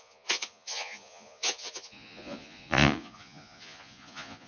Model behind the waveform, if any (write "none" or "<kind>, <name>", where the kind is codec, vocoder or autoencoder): vocoder, Vocos